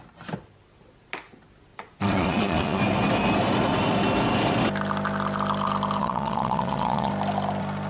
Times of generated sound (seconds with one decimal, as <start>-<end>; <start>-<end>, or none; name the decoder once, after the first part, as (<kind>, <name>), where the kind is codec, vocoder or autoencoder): 1.7-2.8 (vocoder, Vocos); 6.0-7.1